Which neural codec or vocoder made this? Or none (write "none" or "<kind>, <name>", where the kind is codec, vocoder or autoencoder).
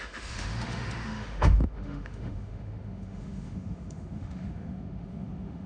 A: autoencoder, DAC-VAE